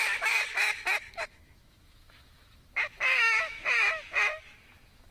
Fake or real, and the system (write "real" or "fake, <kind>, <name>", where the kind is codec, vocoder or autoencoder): fake, autoencoder, DAC-VAE